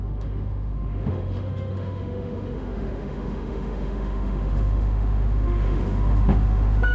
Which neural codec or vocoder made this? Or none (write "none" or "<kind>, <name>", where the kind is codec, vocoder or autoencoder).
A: autoencoder, DAC-VAE